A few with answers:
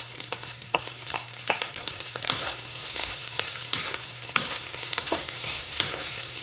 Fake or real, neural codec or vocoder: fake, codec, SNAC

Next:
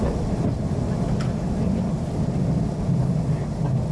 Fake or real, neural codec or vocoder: real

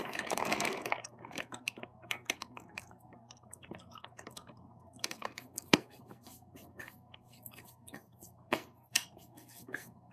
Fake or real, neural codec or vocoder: fake, codec, SNAC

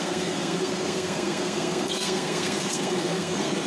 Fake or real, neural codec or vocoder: fake, codec, SNAC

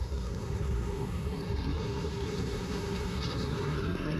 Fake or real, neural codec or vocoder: fake, codec, SNAC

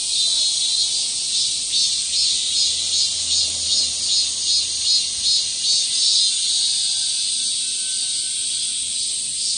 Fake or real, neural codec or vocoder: real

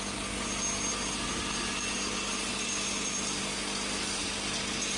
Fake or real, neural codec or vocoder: real